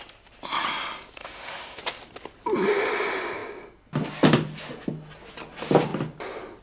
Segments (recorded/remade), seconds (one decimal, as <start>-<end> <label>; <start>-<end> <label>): 0.0-1.2 recorded; 1.2-1.8 remade; 1.8-6.6 recorded